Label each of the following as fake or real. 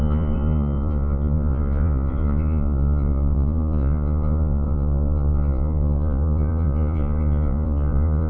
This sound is fake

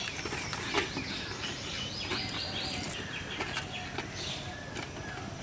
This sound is real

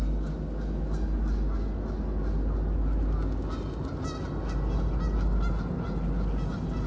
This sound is real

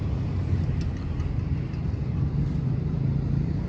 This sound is real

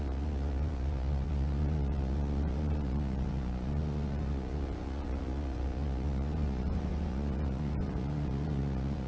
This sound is fake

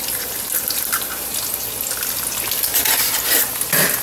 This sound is real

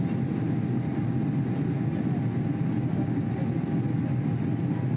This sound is real